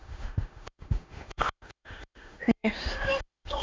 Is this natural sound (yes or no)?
no